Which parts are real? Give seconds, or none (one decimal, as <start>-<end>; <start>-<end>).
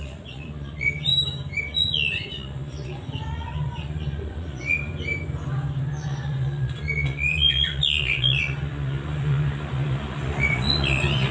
1.1-1.6; 4.9-5.9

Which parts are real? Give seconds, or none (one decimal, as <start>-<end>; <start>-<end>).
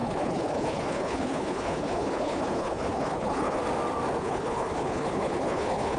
3.6-4.2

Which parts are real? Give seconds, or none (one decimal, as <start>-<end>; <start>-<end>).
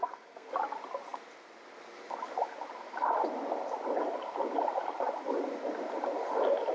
0.5-6.7